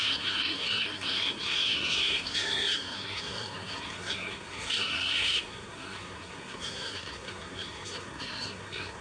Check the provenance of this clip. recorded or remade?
remade